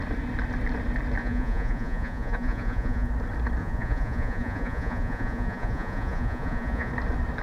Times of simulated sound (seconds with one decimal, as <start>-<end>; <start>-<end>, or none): 1.2-3.1; 3.6-6.9